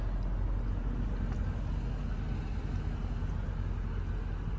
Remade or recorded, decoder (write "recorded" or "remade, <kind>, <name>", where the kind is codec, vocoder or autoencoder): recorded